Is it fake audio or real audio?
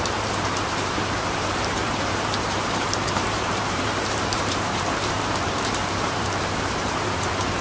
fake